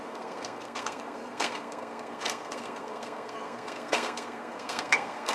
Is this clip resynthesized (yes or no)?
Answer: yes